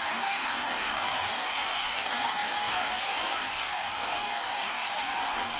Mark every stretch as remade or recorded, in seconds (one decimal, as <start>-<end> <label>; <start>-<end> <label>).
0.0-5.6 remade